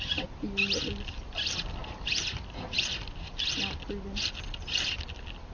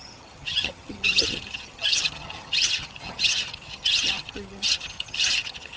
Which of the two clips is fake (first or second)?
second